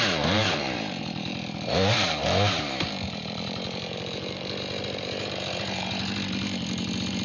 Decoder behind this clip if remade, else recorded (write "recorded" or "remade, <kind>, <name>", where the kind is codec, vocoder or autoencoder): remade, vocoder, BigVGAN v2